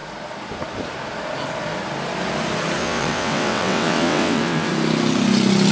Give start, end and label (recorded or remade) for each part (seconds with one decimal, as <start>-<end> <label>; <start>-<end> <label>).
0.0-2.8 recorded; 2.8-4.7 remade; 4.7-5.7 recorded